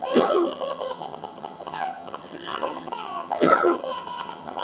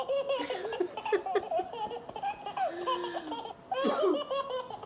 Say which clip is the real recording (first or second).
second